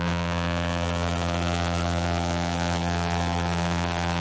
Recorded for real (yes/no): no